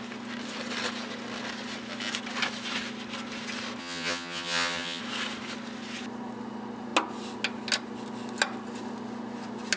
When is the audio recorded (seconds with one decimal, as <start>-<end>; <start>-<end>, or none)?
0.0-3.8; 5.0-9.8